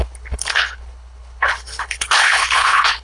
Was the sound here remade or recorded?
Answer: remade